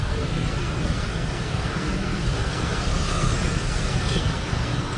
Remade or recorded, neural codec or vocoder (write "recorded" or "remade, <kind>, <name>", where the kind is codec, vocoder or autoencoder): remade, codec, SNAC